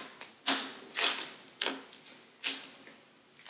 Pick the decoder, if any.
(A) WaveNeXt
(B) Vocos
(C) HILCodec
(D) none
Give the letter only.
D